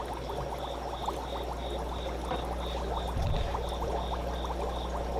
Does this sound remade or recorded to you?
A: recorded